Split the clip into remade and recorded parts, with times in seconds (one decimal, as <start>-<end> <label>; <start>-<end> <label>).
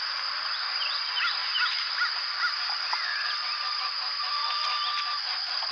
0.0-1.4 recorded; 1.4-4.8 remade; 4.8-5.7 recorded